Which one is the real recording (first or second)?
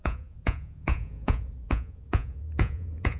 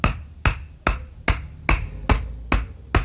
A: second